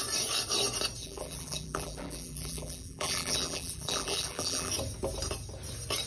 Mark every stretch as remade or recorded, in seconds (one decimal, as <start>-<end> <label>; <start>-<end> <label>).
0.0-1.0 recorded; 1.0-4.7 remade; 4.7-6.1 recorded